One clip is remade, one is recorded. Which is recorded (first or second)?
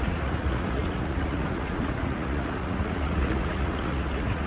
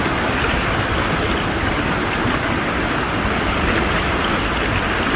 second